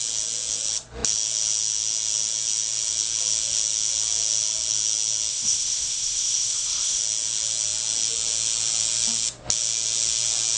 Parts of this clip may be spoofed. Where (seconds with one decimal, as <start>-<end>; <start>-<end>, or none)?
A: 5.3-7.0

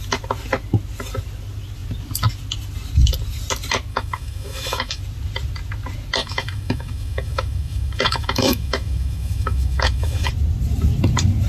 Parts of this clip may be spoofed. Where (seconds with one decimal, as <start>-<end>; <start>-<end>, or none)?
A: 3.9-5.0; 6.2-10.3

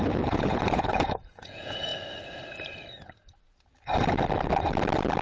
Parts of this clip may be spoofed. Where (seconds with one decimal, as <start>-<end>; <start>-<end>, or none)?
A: 0.0-1.9

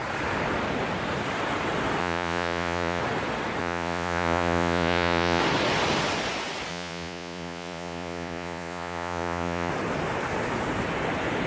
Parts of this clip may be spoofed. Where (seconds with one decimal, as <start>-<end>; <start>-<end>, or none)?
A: 2.0-3.0; 3.6-5.4; 6.7-9.7

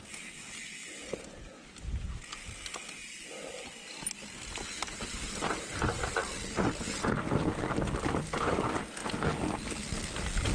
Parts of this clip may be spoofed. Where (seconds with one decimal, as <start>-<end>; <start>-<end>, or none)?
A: 4.8-6.2